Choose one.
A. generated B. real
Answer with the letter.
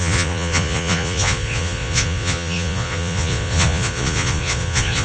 A